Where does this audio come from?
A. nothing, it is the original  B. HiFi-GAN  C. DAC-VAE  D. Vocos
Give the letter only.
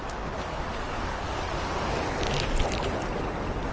A